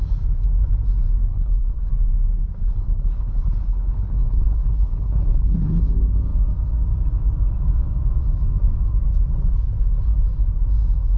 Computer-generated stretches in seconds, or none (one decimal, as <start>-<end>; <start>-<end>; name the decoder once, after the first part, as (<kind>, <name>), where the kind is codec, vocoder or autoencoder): 1.3-1.9 (codec, HILCodec); 2.6-5.8